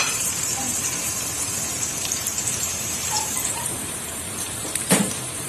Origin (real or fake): fake